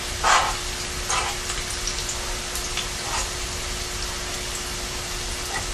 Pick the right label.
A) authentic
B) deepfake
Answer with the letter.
A